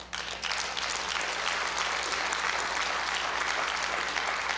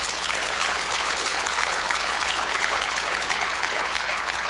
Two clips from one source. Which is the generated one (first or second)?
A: second